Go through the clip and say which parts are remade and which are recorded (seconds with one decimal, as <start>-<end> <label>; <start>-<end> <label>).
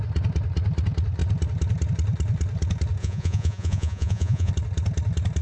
0.0-3.0 recorded; 3.0-4.5 remade; 4.5-5.4 recorded